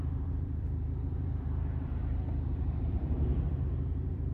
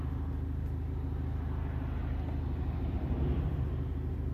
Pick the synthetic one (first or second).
first